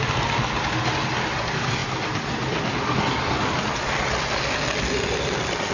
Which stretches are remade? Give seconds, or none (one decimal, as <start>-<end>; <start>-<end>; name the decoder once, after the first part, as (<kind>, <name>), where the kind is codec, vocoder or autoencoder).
none